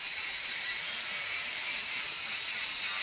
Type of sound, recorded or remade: remade